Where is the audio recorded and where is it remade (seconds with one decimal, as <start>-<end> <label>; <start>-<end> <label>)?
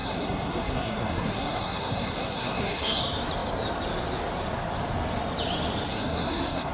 0.0-3.0 remade; 3.0-5.9 recorded; 5.9-6.7 remade